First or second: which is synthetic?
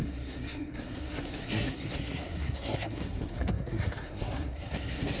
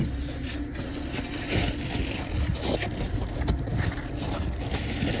first